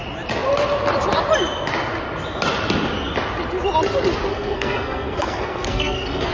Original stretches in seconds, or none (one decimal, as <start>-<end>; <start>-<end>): 0.0-4.3

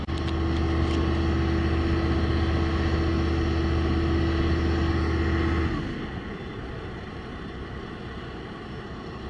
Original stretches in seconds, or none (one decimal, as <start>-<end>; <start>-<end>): 0.0-9.3

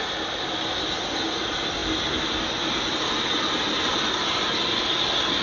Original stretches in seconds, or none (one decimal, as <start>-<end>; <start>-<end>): 0.0-5.4

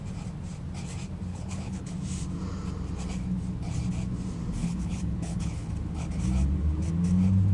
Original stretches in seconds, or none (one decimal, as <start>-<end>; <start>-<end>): 0.0-1.3; 1.9-4.6; 5.7-7.5

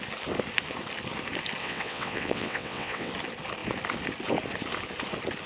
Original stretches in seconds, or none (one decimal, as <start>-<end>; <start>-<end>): 0.0-1.6; 3.1-5.5

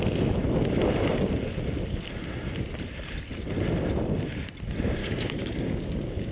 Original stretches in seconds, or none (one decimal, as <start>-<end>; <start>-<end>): 0.0-5.0

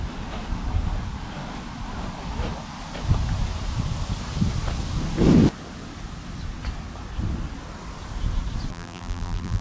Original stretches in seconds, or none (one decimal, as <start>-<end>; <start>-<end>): 0.0-8.7

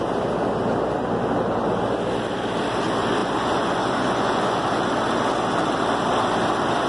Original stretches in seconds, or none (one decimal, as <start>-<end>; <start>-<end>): 0.0-3.2; 4.6-6.9